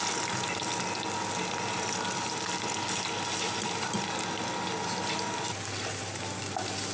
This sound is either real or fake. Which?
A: real